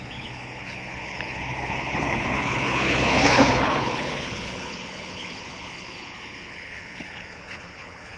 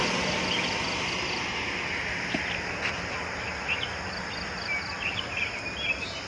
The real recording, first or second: second